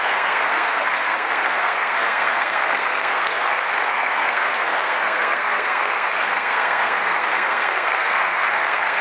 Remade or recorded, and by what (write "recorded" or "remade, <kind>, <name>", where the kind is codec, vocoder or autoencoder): remade, codec, SNAC